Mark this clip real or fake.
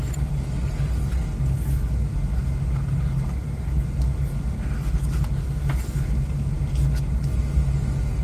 real